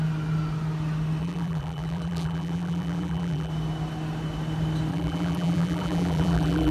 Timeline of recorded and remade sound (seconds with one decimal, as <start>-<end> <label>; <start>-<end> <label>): 0.0-1.2 recorded; 1.2-3.5 remade; 3.5-4.9 recorded; 4.9-6.7 remade